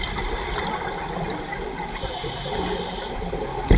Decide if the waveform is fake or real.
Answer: real